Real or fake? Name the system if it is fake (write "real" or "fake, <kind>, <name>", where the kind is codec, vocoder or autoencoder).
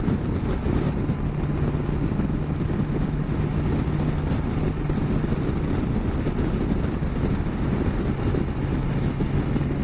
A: real